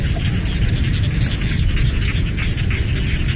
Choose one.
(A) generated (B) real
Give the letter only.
B